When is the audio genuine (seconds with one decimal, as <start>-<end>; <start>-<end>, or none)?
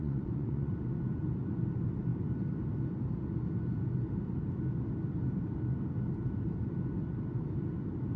0.7-8.2